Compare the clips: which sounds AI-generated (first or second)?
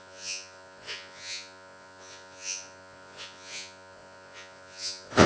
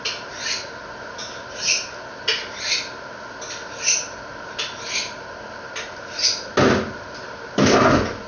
first